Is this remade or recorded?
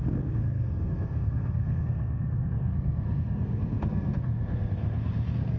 remade